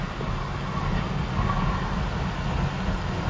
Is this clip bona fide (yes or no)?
yes